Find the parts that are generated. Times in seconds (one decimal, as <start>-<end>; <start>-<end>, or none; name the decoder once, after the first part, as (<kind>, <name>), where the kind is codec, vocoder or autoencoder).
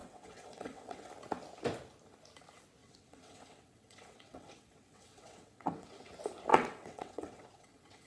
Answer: 0.0-1.1 (vocoder, WaveNeXt); 2.8-6.1; 6.5-8.1